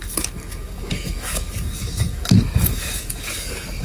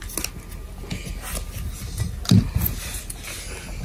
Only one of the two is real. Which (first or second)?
second